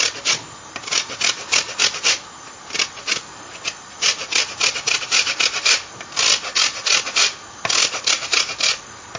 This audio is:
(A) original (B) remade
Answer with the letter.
A